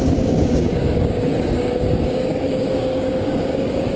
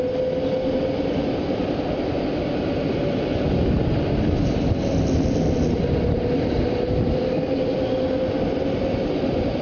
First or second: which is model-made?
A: first